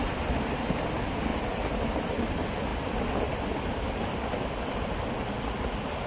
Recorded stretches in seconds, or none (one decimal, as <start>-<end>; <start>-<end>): 0.0-6.1

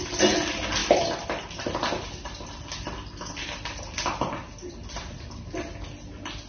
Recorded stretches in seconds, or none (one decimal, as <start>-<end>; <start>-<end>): 0.0-6.5